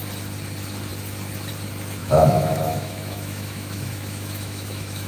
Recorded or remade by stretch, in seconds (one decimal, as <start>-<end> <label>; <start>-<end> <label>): 0.0-2.0 recorded; 2.0-5.1 remade